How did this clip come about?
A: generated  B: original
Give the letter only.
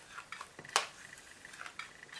B